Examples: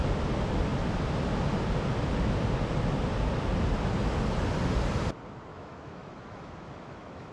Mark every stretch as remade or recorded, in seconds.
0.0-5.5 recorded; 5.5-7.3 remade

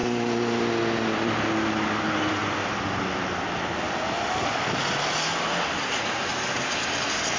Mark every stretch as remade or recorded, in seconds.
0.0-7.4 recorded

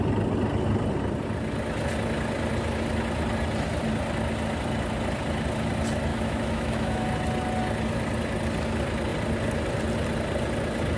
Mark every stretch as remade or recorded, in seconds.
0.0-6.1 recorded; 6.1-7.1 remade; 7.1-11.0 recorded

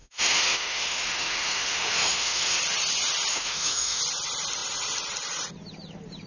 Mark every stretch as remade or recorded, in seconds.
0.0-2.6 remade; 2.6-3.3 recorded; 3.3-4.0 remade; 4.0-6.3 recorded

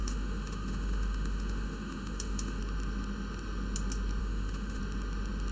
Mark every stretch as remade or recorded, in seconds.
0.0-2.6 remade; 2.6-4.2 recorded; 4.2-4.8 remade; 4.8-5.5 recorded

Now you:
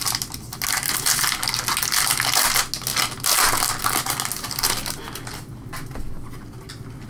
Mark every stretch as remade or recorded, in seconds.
0.0-7.1 recorded

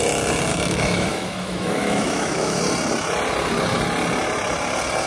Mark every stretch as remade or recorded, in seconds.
0.0-0.5 recorded; 0.5-2.6 remade; 2.6-5.1 recorded

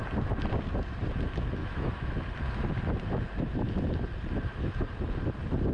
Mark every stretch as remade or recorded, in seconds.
0.0-1.6 recorded; 1.6-2.2 remade; 2.2-5.7 recorded